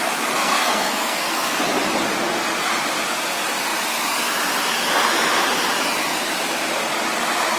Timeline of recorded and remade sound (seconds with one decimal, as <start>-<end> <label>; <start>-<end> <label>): 0.0-0.4 recorded; 0.4-1.6 remade; 1.6-7.6 recorded